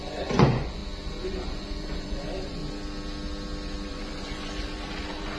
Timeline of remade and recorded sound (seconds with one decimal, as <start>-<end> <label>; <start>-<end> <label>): 0.0-0.8 remade; 0.8-1.5 recorded; 1.5-2.6 remade; 2.6-3.9 recorded; 3.9-5.4 remade